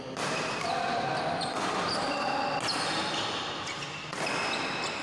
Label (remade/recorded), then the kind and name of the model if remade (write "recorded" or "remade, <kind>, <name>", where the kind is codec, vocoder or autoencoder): recorded